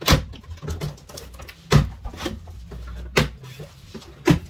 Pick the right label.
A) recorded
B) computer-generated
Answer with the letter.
A